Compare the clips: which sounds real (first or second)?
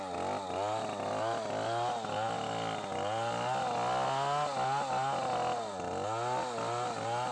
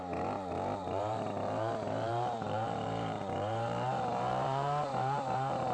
first